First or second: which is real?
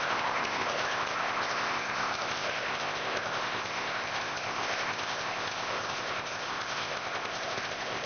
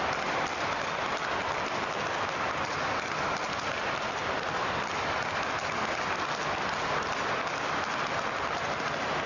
second